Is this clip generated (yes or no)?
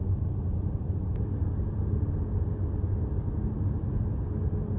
no